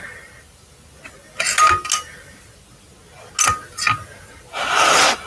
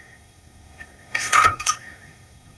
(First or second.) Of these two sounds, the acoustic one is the first